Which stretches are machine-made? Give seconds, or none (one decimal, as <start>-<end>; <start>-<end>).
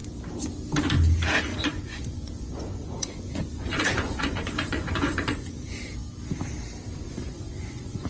1.5-5.8; 6.9-8.1